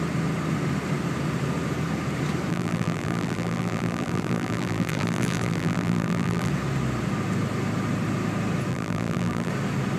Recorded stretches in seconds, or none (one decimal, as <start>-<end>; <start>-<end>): 0.0-2.5; 6.5-8.7; 9.5-10.0